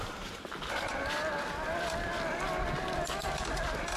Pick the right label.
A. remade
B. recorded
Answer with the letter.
B